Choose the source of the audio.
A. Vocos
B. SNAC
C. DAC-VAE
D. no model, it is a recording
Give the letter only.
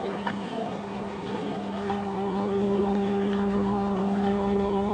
B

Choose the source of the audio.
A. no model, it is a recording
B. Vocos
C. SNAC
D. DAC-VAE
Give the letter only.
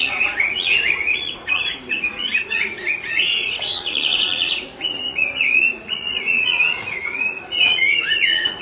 B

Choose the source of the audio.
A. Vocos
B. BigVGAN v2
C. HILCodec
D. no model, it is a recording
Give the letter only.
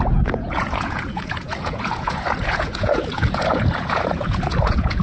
A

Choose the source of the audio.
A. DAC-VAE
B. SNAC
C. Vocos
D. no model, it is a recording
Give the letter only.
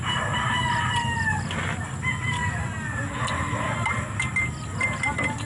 D